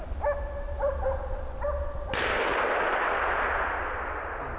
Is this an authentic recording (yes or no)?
yes